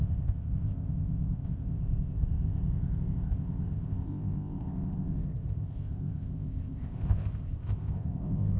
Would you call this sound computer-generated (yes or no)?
yes